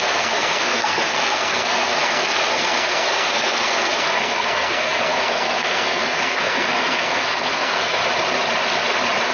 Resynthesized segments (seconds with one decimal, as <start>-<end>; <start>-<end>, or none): 0.0-8.0